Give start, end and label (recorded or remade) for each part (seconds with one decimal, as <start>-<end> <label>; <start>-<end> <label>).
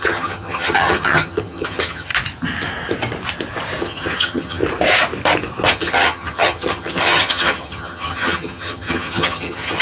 0.0-2.1 remade; 2.1-3.8 recorded; 3.8-4.6 remade; 4.6-5.7 recorded; 5.7-9.8 remade